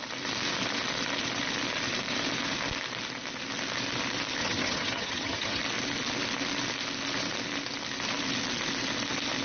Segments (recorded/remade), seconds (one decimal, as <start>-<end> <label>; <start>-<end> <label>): 0.0-4.4 recorded; 4.4-5.6 remade; 5.6-9.4 recorded